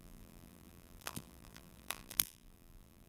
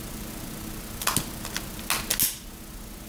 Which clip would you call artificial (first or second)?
first